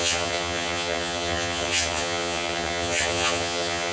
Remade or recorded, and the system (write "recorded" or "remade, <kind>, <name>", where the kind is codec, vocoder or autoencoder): remade, vocoder, HiFi-GAN